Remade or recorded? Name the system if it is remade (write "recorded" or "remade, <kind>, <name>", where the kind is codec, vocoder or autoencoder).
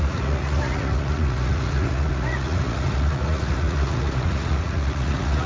remade, vocoder, Vocos